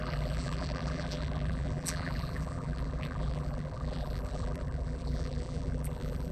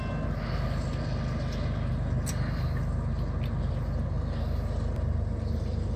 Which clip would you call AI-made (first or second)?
first